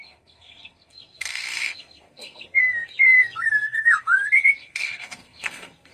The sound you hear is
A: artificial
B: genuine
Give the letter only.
A